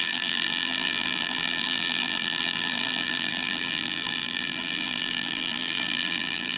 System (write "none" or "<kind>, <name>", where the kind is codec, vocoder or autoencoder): vocoder, BigVGAN v2